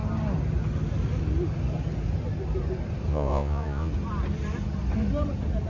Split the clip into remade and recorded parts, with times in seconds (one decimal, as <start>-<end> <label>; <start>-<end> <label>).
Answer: 0.0-3.1 recorded; 3.1-3.9 remade; 3.9-5.7 recorded